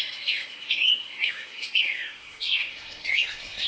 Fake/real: fake